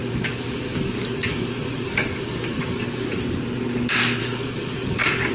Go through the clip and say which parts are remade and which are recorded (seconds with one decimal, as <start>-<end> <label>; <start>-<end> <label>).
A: 0.0-3.2 remade; 3.2-4.2 recorded; 4.2-5.3 remade